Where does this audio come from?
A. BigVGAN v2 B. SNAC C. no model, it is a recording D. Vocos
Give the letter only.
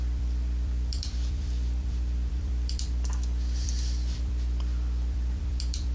A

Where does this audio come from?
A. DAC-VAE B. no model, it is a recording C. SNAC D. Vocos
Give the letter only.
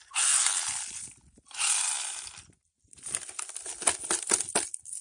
B